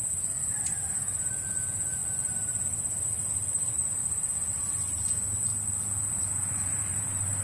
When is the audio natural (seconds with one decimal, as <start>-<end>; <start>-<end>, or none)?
4.0-4.6; 5.5-6.1